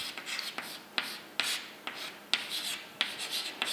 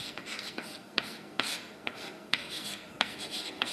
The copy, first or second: second